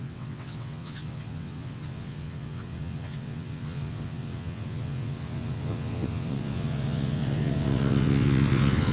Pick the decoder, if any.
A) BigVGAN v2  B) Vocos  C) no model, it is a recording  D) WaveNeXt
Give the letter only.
D